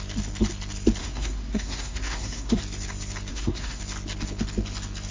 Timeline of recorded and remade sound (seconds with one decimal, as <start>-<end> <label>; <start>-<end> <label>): 0.0-1.0 recorded; 1.0-2.6 remade; 2.6-3.3 recorded; 3.3-3.8 remade; 3.8-5.1 recorded